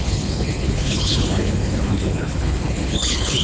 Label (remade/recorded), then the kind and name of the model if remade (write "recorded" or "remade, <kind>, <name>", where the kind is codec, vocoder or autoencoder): remade, codec, HILCodec